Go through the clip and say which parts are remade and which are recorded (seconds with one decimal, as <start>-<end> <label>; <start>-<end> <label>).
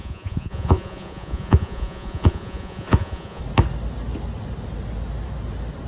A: 0.0-3.4 remade; 3.4-5.9 recorded